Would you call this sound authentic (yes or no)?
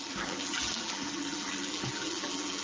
no